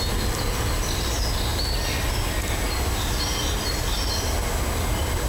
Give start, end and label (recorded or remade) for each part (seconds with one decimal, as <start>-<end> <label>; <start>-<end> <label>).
0.0-5.3 recorded